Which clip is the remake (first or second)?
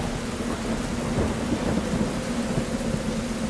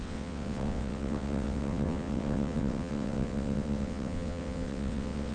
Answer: second